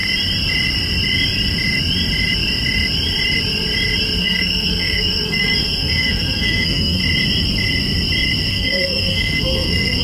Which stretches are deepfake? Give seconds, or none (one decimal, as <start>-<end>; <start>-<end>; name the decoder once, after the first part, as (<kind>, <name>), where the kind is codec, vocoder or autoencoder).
4.2-7.0 (codec, SNAC); 8.5-10.0